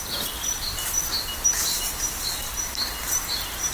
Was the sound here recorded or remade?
recorded